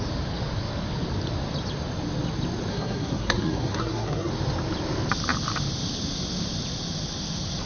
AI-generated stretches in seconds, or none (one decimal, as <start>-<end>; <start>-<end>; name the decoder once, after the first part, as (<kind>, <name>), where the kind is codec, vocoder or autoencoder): 2.7-4.3 (codec, SNAC)